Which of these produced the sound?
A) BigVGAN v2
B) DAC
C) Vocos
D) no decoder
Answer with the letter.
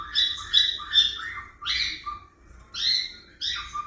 D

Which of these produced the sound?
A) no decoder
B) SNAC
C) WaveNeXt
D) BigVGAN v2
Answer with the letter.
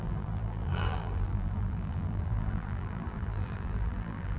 D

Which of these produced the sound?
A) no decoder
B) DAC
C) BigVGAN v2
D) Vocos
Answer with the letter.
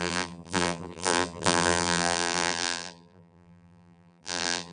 C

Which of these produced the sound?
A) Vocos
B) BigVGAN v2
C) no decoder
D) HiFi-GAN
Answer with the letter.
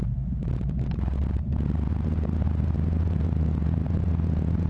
B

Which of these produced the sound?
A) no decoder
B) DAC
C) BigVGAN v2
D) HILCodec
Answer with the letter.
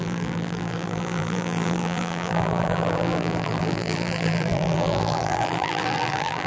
C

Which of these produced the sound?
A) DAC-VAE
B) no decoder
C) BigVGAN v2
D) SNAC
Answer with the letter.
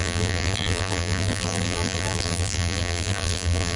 C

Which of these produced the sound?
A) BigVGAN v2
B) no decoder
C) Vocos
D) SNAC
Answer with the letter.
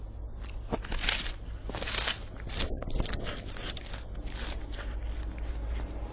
B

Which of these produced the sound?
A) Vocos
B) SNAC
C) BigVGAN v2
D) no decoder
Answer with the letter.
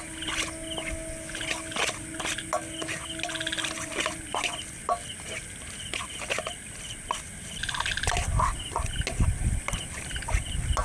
D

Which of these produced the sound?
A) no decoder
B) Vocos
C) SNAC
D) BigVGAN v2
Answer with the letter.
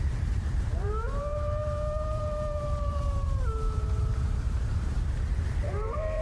D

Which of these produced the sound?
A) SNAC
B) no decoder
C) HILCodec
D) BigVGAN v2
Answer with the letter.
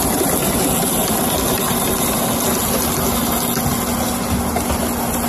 B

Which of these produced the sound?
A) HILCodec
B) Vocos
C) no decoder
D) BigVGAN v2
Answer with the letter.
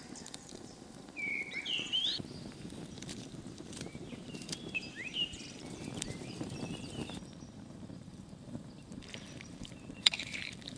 D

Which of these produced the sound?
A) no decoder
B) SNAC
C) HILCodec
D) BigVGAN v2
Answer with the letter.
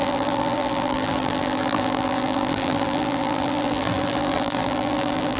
D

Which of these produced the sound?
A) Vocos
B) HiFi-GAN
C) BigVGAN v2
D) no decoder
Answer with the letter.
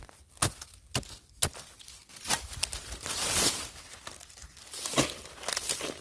D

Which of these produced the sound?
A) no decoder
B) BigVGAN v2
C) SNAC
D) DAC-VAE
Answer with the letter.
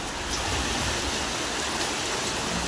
A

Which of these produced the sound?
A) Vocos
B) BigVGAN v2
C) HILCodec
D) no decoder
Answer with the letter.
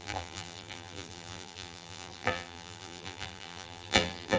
B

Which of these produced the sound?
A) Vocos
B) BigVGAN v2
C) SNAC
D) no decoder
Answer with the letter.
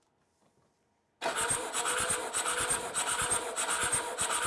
D